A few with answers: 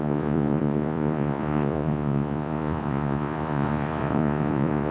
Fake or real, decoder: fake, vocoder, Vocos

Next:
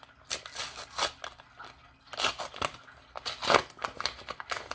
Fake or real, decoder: real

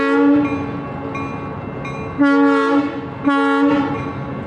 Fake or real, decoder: real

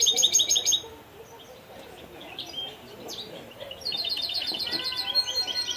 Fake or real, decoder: fake, vocoder, BigVGAN v2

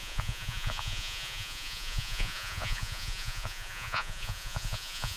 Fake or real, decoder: fake, vocoder, Vocos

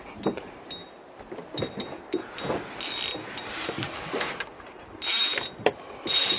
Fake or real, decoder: real